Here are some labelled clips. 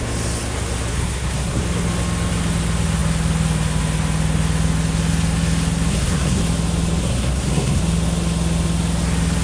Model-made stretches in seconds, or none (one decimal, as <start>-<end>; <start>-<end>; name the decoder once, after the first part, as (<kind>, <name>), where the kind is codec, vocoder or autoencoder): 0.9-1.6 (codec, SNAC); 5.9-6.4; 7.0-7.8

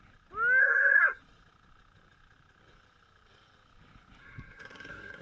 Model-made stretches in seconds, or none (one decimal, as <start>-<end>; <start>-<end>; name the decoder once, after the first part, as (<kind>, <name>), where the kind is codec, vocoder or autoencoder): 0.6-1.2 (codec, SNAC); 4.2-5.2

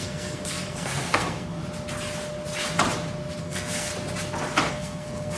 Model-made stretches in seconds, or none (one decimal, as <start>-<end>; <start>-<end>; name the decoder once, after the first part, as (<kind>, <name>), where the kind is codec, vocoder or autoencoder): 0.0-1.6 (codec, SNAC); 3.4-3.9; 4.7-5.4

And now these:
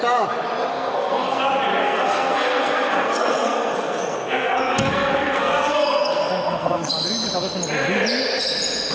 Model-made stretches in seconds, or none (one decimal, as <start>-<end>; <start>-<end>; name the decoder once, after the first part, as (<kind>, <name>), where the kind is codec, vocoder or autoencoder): 0.7-1.4 (codec, SNAC); 1.8-6.9